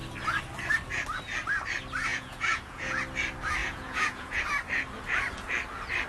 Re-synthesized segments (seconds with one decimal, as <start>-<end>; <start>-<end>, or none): 2.1-3.0; 3.6-4.4